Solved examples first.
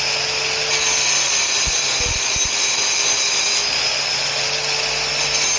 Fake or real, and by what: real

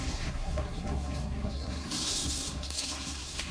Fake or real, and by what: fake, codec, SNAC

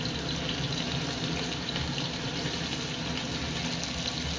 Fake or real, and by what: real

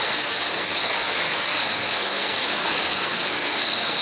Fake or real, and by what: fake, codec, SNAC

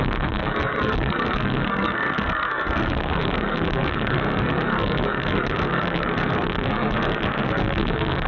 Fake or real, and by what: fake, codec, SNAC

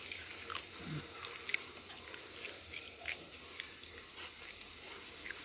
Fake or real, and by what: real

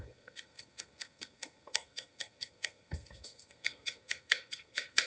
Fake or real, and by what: fake, codec, SNAC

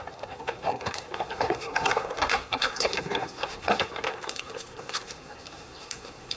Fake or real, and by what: fake, codec, SNAC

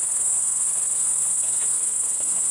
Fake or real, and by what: fake, codec, SNAC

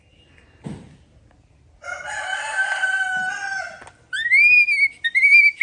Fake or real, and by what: real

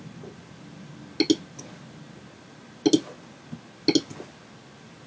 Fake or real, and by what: real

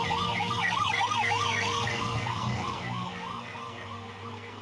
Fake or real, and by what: fake, codec, SNAC